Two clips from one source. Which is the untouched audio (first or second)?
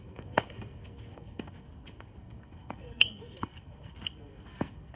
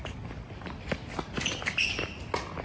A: second